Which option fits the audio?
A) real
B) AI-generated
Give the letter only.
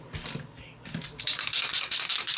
A